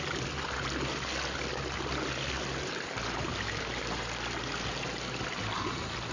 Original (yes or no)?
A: yes